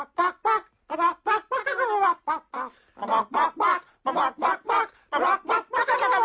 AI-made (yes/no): no